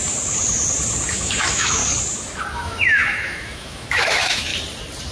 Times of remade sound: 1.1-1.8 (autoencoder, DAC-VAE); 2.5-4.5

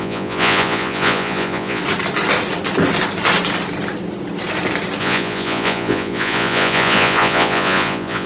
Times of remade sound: 0.0-1.8 (vocoder, Vocos); 5.0-8.3

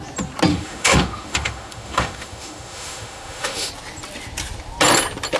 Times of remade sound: 0.5-3.7 (autoencoder, DAC-VAE)

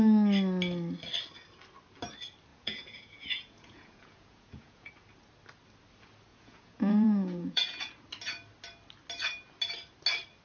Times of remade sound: 2.5-4.9 (vocoder, Vocos); 6.3-7.9

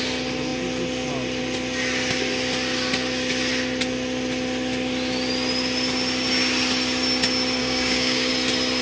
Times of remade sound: 7.6-8.3 (codec, DAC)

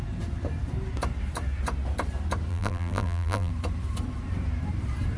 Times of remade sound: 2.5-3.5 (vocoder, BigVGAN v2)

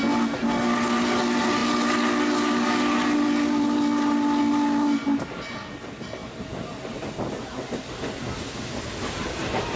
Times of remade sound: none

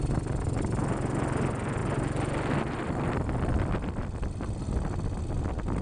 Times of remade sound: none